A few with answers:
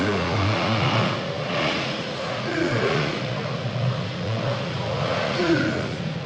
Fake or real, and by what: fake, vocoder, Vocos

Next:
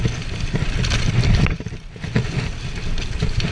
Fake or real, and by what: real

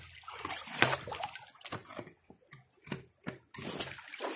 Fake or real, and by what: real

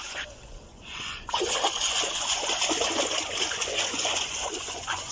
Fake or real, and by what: fake, vocoder, Vocos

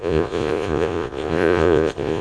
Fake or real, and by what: fake, vocoder, Vocos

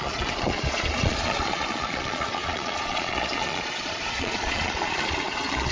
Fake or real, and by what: fake, vocoder, Vocos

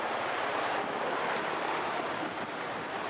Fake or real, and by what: real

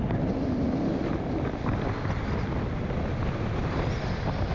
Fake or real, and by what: real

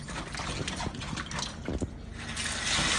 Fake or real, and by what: real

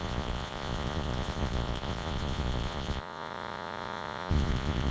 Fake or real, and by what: fake, vocoder, Vocos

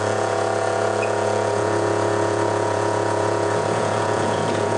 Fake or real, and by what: fake, vocoder, Vocos